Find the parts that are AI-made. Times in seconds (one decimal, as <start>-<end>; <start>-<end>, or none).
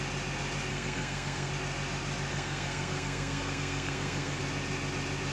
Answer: 0.7-1.5; 2.3-4.4